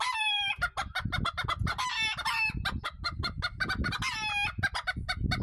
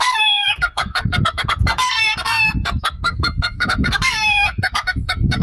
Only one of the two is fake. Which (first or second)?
second